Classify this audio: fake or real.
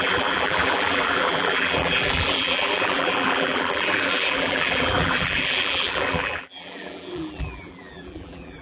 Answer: fake